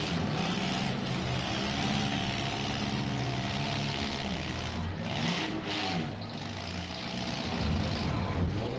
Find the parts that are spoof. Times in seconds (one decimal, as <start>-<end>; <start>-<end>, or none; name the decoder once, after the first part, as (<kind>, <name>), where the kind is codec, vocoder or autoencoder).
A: 5.2-5.7 (codec, SNAC)